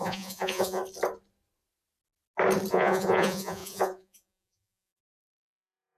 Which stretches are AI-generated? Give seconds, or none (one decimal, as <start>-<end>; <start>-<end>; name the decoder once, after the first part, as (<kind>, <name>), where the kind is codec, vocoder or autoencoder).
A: 0.0-0.8 (vocoder, Vocos); 2.7-6.0